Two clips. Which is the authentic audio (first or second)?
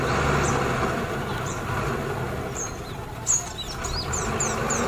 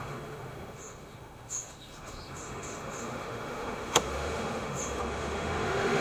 first